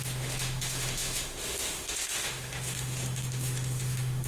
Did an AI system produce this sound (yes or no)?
yes